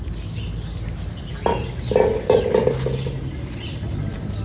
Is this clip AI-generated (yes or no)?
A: no